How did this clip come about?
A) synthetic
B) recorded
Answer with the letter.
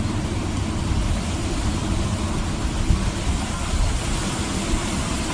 B